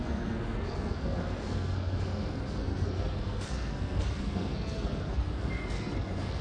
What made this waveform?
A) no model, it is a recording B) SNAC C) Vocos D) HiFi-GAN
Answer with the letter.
B